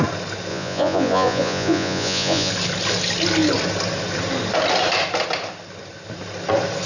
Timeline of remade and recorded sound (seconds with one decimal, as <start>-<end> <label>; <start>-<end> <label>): 0.0-0.5 recorded; 0.5-2.5 remade; 2.5-6.9 recorded